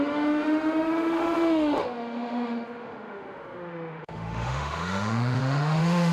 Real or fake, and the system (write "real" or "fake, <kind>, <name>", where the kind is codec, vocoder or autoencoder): fake, autoencoder, DAC-VAE